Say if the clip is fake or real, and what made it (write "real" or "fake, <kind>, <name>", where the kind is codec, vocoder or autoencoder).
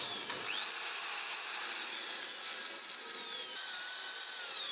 real